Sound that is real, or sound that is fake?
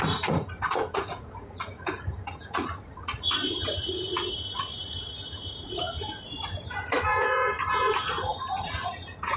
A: fake